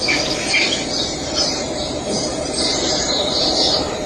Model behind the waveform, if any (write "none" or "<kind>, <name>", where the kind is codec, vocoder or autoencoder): vocoder, BigVGAN v2